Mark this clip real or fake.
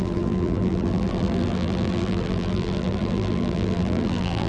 fake